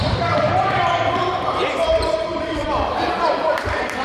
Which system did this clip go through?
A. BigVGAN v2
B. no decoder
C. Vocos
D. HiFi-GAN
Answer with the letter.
A